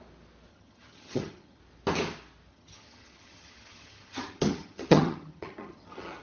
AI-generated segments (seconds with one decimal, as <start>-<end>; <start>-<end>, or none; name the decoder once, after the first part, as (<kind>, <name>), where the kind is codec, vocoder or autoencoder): 0.5-1.6 (vocoder, HiFi-GAN); 2.5-6.2